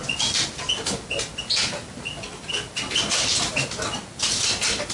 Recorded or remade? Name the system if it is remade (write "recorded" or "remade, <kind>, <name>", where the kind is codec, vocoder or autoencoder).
recorded